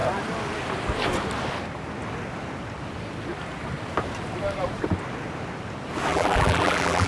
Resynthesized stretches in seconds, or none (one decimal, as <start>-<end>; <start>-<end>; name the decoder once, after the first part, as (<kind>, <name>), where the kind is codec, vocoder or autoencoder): 6.1-7.1 (vocoder, BigVGAN v2)